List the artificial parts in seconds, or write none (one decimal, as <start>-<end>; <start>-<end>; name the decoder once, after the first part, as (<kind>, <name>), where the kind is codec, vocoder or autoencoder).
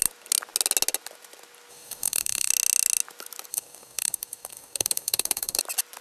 1.7-2.5 (codec, DAC); 3.5-5.6